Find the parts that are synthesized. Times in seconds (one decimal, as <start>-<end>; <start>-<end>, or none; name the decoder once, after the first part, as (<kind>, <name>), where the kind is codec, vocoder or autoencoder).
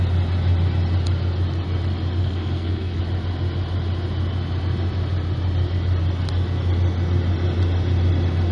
2.2-3.0 (codec, SNAC)